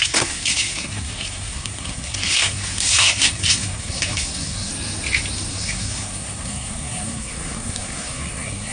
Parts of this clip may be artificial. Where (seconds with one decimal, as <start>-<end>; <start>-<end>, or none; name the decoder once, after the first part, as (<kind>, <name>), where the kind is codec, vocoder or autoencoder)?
0.0-4.7 (codec, SNAC); 5.5-8.7